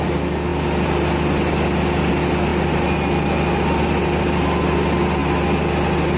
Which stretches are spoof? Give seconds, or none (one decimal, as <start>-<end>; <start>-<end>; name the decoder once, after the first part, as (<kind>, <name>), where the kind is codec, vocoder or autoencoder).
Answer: none